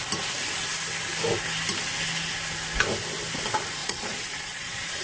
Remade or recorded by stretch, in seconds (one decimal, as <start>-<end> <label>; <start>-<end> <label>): 0.0-3.8 recorded; 3.8-5.0 remade